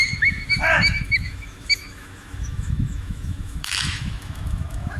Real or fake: fake